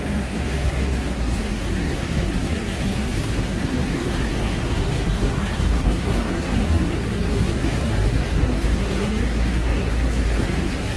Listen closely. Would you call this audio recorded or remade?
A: remade